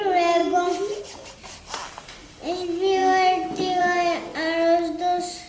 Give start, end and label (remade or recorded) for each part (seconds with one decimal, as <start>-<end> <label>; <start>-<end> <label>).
0.0-5.5 recorded

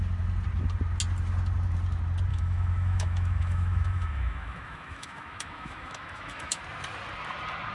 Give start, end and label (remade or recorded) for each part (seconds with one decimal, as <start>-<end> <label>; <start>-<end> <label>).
0.0-2.3 recorded; 2.3-6.6 remade; 6.6-7.7 recorded

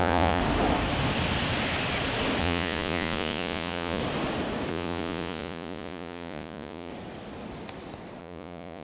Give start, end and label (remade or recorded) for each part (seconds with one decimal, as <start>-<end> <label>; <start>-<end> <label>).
0.0-0.4 remade; 0.4-2.4 recorded; 2.4-4.0 remade; 4.0-4.7 recorded; 4.7-6.9 remade; 6.9-8.2 recorded; 8.2-8.8 remade

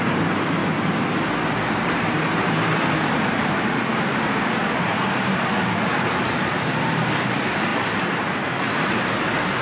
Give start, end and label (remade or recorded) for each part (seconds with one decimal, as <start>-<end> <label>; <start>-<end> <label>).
0.0-0.6 remade; 0.6-1.8 recorded; 1.8-7.7 remade; 7.7-8.9 recorded; 8.9-9.6 remade

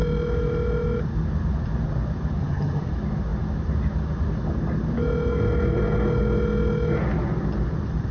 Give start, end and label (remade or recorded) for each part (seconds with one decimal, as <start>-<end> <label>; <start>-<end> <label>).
0.0-2.4 recorded; 2.4-2.9 remade; 2.9-8.1 recorded

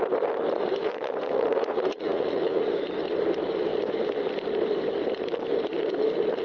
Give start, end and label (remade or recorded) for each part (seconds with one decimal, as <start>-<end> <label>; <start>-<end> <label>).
0.0-0.8 recorded; 0.8-2.6 remade; 2.6-6.4 recorded

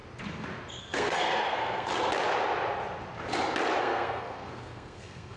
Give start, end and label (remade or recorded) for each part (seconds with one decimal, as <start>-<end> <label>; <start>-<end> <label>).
0.0-0.8 recorded; 0.8-1.9 remade; 1.9-3.8 recorded; 3.8-5.4 remade